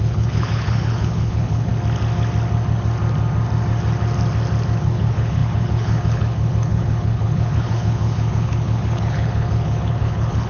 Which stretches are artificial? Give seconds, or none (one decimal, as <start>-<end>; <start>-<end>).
0.0-1.7; 4.8-10.5